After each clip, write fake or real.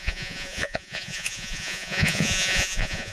fake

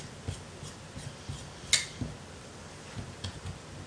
real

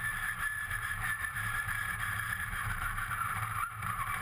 fake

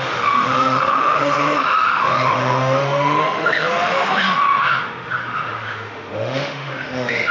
fake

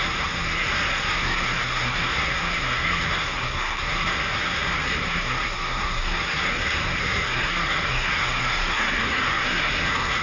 fake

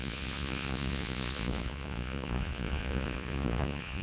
fake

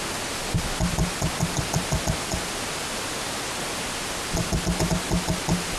real